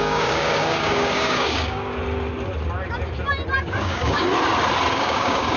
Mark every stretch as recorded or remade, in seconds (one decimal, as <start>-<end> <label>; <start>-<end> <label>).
0.0-2.0 remade; 2.0-3.6 recorded; 3.6-4.3 remade; 4.3-4.9 recorded; 4.9-5.6 remade

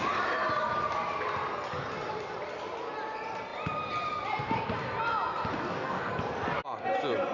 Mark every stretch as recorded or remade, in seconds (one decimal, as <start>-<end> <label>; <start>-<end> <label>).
0.0-5.5 recorded; 5.5-6.1 remade; 6.1-7.3 recorded

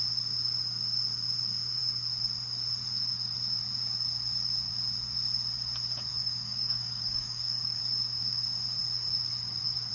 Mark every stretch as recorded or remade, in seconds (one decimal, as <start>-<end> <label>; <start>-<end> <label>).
0.0-6.1 recorded; 6.1-7.8 remade; 7.8-9.9 recorded

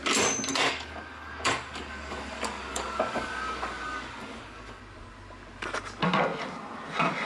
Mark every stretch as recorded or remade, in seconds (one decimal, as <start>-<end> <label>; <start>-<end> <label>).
0.0-0.5 recorded; 0.5-4.8 remade; 4.8-7.2 recorded